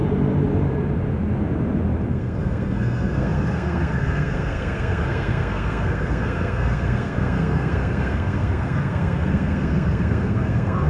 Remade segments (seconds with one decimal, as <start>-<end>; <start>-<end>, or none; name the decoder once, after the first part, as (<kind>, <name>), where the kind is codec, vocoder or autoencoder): 2.1-10.9 (codec, SNAC)